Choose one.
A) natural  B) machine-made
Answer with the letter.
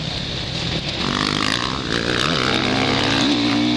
A